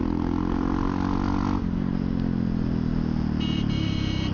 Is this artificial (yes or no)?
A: no